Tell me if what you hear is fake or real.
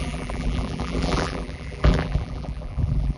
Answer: fake